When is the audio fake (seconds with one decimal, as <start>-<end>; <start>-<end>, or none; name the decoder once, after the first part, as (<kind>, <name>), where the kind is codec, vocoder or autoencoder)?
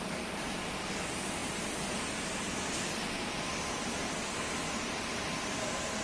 none